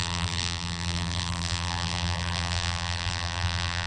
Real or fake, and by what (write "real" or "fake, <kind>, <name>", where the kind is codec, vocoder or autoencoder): fake, vocoder, BigVGAN v2